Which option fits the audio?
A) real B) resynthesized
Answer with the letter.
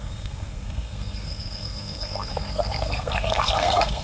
B